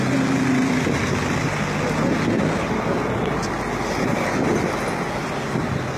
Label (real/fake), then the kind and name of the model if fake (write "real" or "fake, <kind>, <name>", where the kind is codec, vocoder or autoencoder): real